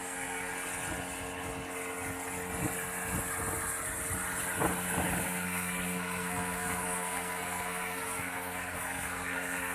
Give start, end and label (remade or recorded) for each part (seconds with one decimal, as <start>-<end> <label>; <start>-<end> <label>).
0.0-0.5 remade; 0.5-5.2 recorded; 5.2-9.7 remade